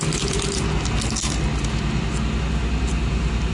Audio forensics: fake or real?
real